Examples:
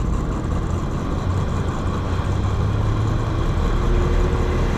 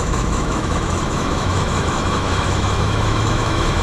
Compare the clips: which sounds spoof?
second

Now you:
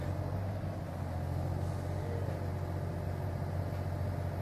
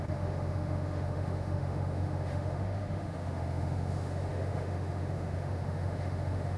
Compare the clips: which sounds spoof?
second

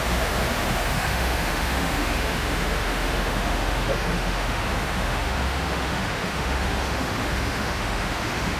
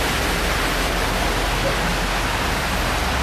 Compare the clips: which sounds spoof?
first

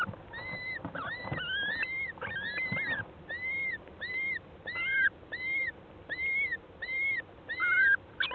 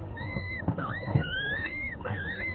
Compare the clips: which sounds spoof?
second